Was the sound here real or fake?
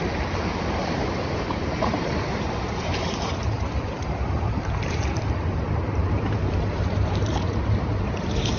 fake